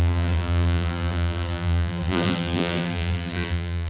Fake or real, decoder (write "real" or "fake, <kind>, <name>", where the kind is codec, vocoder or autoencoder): fake, vocoder, BigVGAN v2